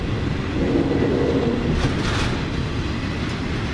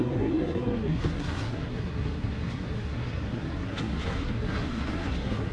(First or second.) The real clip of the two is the first